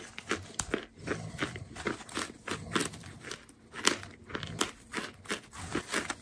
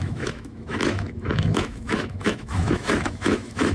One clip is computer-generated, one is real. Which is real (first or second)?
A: first